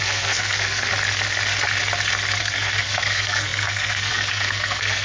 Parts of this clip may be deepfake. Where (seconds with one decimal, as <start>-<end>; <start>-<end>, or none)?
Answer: 0.0-0.9; 2.4-5.0